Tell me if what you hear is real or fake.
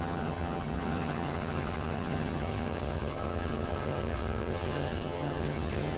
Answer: fake